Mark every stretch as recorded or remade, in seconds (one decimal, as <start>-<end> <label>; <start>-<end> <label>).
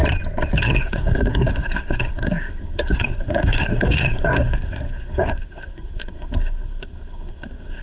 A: 0.0-0.6 recorded; 0.6-7.8 remade